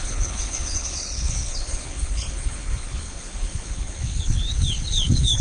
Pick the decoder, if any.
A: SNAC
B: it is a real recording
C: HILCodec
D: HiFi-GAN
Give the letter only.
C